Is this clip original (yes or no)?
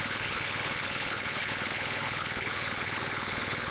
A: no